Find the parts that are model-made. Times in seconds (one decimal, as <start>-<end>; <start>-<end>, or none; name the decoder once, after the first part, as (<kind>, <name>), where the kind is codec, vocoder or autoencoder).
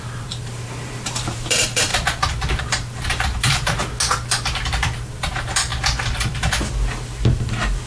0.0-1.9 (vocoder, BigVGAN v2); 2.6-3.8; 5.0-5.7; 7.3-7.9